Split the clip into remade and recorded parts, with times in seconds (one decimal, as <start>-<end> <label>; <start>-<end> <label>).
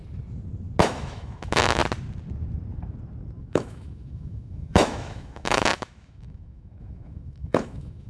0.0-0.8 recorded; 0.8-1.8 remade; 1.8-3.4 recorded; 3.4-8.1 remade